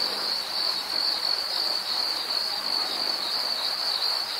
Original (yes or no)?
yes